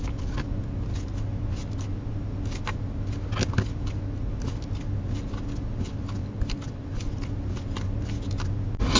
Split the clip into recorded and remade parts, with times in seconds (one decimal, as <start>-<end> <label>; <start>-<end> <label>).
0.0-6.2 recorded; 6.2-7.1 remade; 7.1-9.0 recorded